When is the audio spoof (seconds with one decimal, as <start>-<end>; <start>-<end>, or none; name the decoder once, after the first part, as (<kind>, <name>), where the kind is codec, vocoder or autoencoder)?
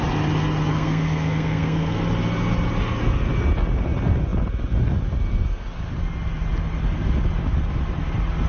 0.7-2.0 (codec, SNAC)